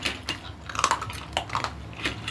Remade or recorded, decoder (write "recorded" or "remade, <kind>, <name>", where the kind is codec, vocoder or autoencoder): recorded